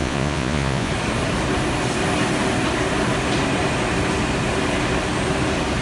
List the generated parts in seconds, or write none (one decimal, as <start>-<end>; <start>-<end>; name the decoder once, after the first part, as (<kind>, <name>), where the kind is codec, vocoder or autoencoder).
0.0-0.9 (vocoder, Vocos)